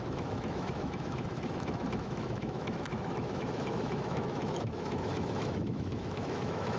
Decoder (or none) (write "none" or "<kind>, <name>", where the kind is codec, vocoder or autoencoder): autoencoder, DAC-VAE